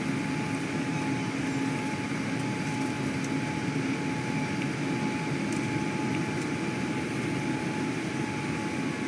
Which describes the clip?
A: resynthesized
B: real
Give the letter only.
B